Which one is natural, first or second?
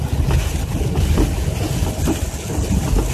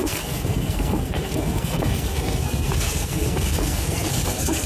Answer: first